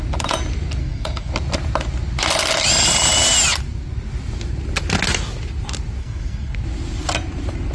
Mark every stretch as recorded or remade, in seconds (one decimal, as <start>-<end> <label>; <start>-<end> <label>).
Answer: 0.0-0.8 recorded; 0.8-1.3 remade; 1.3-6.0 recorded; 6.0-6.5 remade; 6.5-7.7 recorded